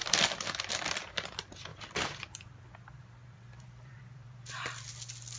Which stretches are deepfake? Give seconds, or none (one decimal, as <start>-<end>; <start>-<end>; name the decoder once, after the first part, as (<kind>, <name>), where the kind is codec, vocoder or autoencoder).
1.7-4.9 (vocoder, BigVGAN v2)